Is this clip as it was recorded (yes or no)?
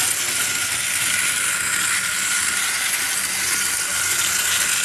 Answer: yes